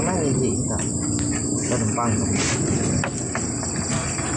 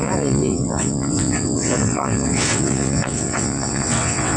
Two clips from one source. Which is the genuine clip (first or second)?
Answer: first